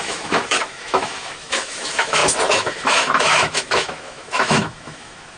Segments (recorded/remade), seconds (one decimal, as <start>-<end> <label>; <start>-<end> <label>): 0.0-5.4 remade